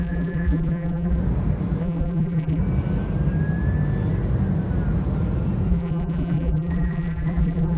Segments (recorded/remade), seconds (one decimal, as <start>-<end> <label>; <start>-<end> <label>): 0.0-1.2 remade; 1.2-1.8 recorded; 1.8-2.6 remade; 2.6-5.7 recorded; 5.7-7.8 remade